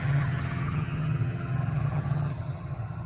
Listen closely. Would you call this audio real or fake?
fake